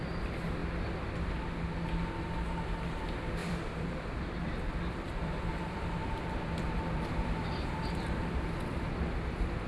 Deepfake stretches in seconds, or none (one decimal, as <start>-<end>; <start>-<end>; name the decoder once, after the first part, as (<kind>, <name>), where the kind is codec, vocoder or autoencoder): 0.0-0.6 (vocoder, BigVGAN v2); 2.9-9.7